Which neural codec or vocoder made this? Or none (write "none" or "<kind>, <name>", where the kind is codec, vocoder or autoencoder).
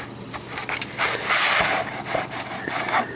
none